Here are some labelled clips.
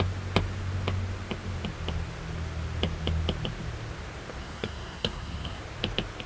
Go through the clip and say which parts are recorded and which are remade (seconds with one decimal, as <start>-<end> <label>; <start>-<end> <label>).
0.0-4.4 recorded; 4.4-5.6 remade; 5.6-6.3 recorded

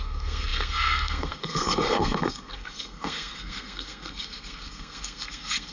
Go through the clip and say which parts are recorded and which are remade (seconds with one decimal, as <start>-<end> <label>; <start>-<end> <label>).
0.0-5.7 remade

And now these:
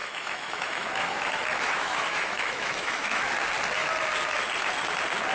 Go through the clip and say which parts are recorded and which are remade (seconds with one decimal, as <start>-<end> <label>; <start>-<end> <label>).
0.0-3.2 remade; 3.2-5.3 recorded

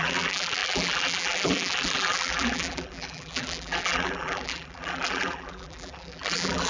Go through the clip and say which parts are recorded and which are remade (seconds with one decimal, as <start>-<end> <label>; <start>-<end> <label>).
0.0-6.7 remade

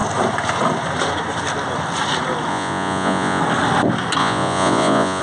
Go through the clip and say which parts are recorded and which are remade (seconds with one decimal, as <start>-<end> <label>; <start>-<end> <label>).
0.0-2.5 recorded; 2.5-3.4 remade; 3.4-4.2 recorded; 4.2-5.2 remade

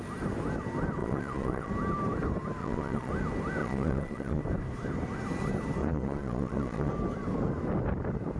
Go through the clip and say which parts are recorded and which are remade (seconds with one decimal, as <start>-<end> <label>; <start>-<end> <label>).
0.0-1.0 recorded; 1.0-1.7 remade; 1.7-2.6 recorded; 2.6-3.1 remade; 3.1-3.6 recorded; 3.6-4.4 remade; 4.4-5.8 recorded; 5.8-6.9 remade; 6.9-8.4 recorded